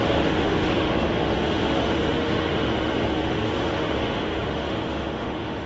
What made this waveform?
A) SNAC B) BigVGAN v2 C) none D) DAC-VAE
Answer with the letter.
D